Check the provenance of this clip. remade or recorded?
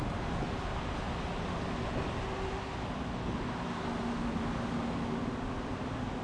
recorded